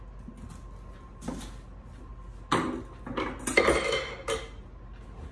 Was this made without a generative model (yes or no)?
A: yes